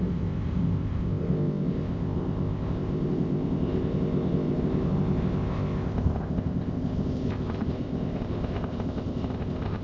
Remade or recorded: remade